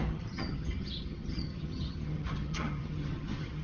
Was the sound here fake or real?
fake